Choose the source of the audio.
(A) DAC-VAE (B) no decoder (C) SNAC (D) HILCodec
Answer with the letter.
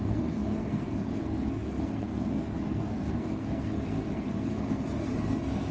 C